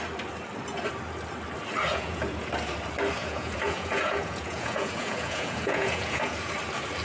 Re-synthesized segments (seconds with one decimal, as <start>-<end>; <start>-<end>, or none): 1.9-2.5; 3.2-6.5